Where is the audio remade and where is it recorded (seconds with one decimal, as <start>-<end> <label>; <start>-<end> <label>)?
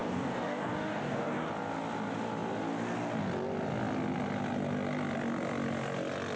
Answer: 0.0-1.5 remade; 1.5-6.4 recorded